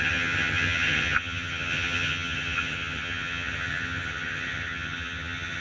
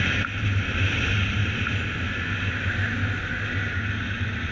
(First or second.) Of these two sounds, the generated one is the first